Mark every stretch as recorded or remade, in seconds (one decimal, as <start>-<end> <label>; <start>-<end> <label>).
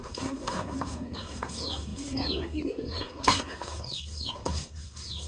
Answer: 0.0-5.3 remade